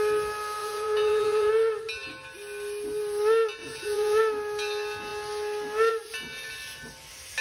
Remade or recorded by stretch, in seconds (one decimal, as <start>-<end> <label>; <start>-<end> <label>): 0.0-0.6 recorded; 0.6-1.5 remade; 1.5-3.6 recorded; 3.6-4.2 remade; 4.2-7.4 recorded